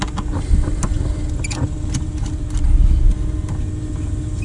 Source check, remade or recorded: recorded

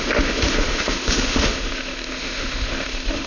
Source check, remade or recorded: remade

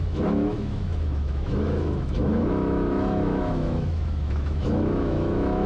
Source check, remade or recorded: remade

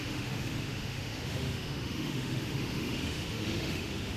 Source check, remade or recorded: remade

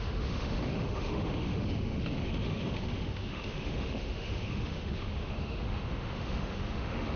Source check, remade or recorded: remade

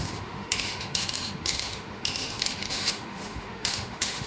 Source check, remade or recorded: remade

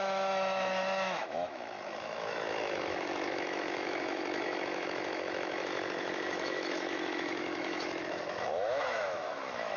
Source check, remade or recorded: remade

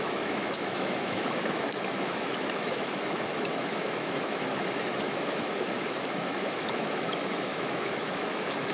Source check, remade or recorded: remade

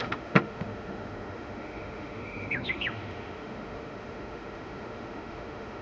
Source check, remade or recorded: remade